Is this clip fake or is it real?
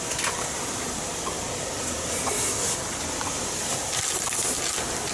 real